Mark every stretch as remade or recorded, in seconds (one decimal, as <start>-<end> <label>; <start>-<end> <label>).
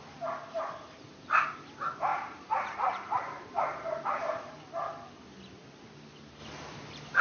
0.0-2.1 recorded; 2.1-4.6 remade; 4.6-7.2 recorded